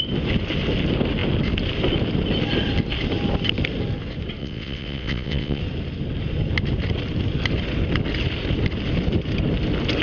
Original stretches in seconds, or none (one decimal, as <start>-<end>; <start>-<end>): 0.0-4.4; 5.6-10.0